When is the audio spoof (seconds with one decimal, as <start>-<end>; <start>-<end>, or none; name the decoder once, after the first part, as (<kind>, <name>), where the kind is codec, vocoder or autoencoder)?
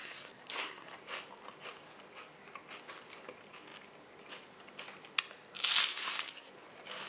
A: 0.0-1.0 (codec, SNAC); 5.9-6.5